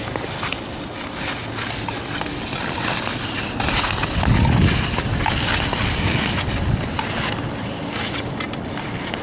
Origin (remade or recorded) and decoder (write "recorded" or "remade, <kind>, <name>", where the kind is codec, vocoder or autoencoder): recorded